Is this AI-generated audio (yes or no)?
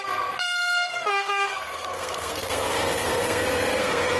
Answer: yes